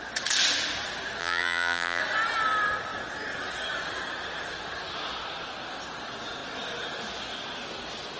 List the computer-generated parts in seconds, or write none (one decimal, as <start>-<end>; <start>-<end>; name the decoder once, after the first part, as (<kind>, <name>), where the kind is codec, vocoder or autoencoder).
1.2-2.0 (vocoder, BigVGAN v2)